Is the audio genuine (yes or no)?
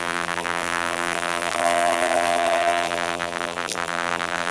no